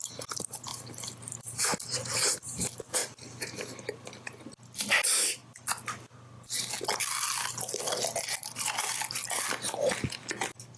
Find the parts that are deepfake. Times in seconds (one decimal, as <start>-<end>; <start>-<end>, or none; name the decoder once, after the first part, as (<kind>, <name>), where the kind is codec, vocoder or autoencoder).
0.7-2.2 (vocoder, BigVGAN v2)